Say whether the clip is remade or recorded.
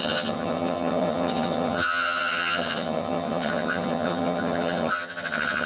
remade